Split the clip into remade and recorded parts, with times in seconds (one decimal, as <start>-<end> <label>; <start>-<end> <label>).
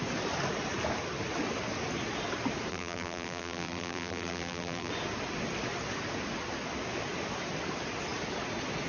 0.0-2.7 recorded; 2.7-4.9 remade; 4.9-8.9 recorded